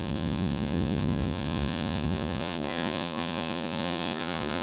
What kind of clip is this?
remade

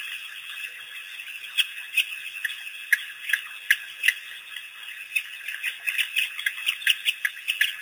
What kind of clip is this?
recorded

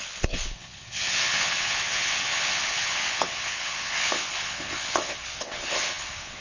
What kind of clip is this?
remade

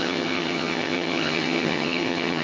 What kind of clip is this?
remade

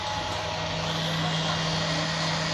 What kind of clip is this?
recorded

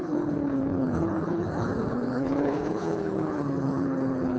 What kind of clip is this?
remade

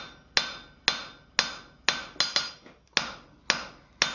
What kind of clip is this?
recorded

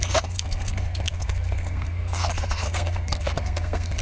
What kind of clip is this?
remade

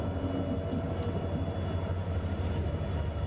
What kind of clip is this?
recorded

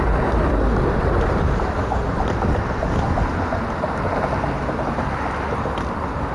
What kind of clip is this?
recorded